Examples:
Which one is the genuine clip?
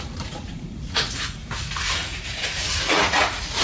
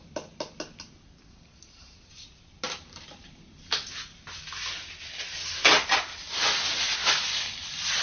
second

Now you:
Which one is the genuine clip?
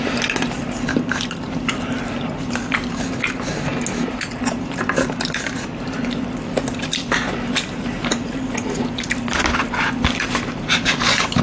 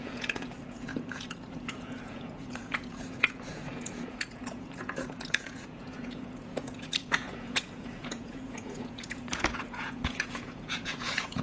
first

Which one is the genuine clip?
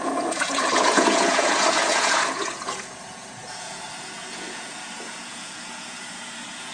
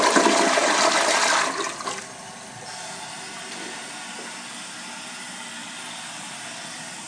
second